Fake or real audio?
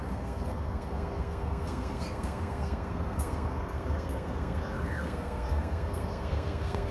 fake